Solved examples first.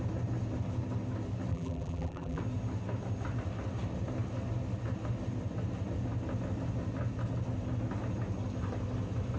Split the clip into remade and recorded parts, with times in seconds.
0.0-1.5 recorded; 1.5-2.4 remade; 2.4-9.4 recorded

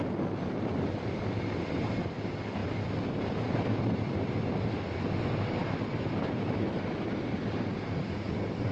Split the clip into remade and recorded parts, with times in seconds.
0.0-8.7 recorded

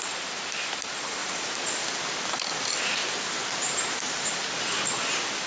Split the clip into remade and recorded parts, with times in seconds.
0.0-5.5 recorded

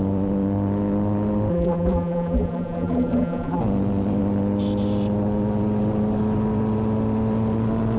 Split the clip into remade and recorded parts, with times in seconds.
0.0-1.5 recorded; 1.5-3.6 remade; 3.6-8.0 recorded

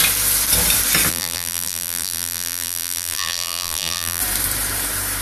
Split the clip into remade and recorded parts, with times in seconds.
0.0-1.1 recorded; 1.1-4.2 remade; 4.2-5.2 recorded